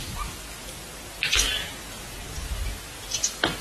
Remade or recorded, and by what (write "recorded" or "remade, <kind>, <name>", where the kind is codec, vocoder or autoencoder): recorded